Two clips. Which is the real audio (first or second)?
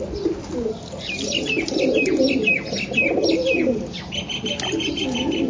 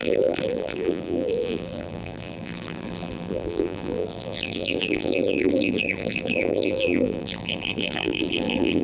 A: first